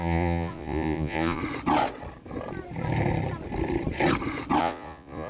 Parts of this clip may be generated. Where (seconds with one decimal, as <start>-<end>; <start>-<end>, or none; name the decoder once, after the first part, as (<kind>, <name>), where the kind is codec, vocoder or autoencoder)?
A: 0.0-1.4 (vocoder, Vocos); 4.6-5.3